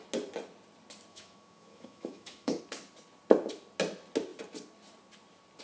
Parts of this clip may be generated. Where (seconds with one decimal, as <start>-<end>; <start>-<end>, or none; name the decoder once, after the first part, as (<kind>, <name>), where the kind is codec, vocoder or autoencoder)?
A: 1.1-2.6 (autoencoder, DAC-VAE)